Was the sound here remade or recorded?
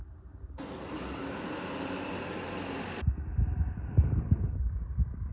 recorded